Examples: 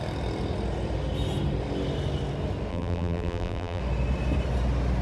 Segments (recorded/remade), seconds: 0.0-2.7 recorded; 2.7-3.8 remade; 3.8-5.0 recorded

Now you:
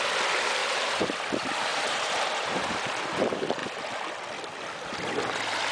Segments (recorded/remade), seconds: 0.0-0.6 recorded; 0.6-1.2 remade; 1.2-1.7 recorded; 1.7-3.2 remade; 3.2-5.7 recorded

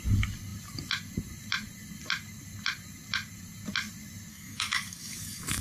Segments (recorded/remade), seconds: 0.0-4.3 recorded; 4.3-5.6 remade

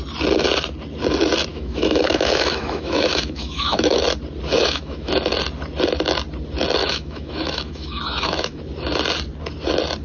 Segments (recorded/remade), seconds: 0.0-1.5 recorded; 1.5-4.0 remade; 4.0-4.6 recorded; 4.6-5.1 remade; 5.1-6.8 recorded; 6.8-8.6 remade; 8.6-10.0 recorded